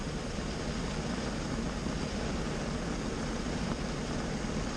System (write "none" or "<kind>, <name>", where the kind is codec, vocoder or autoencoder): none